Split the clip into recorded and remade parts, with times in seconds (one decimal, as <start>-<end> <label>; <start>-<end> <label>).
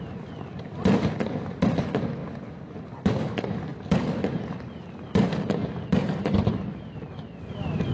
0.0-7.9 recorded